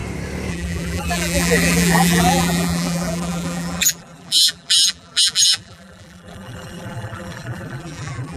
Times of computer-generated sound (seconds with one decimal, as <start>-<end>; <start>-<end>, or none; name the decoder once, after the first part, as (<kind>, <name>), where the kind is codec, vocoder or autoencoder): 0.5-8.4 (vocoder, BigVGAN v2)